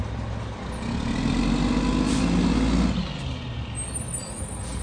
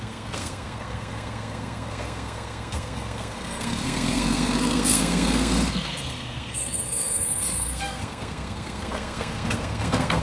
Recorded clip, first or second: first